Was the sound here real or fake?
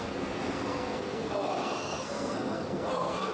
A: fake